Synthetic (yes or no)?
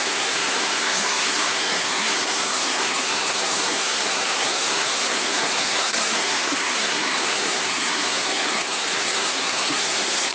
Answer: yes